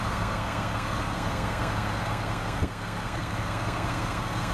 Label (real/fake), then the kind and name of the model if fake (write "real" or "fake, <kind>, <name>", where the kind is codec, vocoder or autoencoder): fake, codec, SNAC